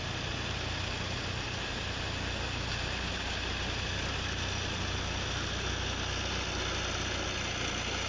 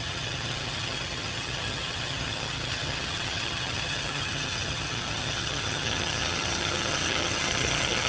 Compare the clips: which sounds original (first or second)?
first